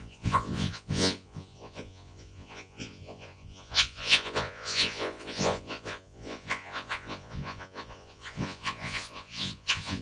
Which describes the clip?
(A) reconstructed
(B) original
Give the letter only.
A